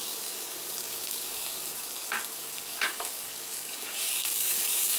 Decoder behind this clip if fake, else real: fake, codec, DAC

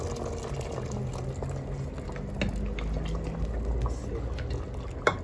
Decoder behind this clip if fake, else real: real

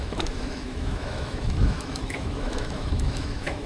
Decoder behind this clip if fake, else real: fake, autoencoder, DAC-VAE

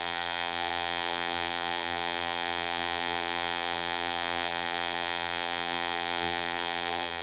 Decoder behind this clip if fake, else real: fake, vocoder, BigVGAN v2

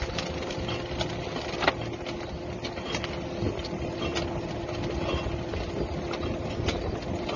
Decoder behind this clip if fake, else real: real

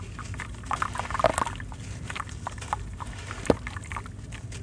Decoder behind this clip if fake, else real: real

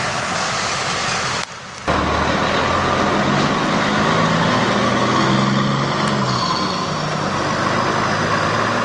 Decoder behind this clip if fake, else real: real